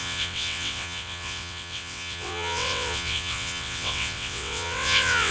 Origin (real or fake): fake